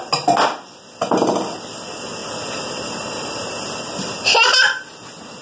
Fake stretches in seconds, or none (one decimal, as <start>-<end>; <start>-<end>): none